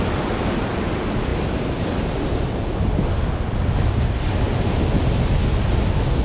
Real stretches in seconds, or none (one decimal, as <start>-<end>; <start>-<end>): 0.0-6.2